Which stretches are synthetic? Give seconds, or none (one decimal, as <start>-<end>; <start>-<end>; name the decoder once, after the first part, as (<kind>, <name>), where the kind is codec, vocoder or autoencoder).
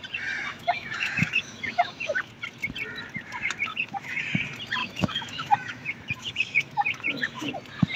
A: 0.5-2.3 (autoencoder, DAC-VAE); 3.7-4.2; 4.8-7.5